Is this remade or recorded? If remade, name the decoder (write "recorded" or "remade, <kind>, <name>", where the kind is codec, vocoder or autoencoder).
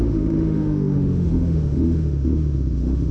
remade, autoencoder, DAC-VAE